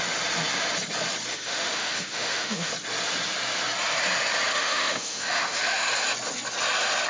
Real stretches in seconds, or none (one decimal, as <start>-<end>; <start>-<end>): 0.0-1.3; 2.7-4.5; 5.9-7.1